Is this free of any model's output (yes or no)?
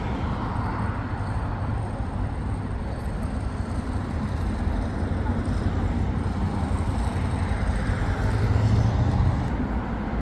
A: yes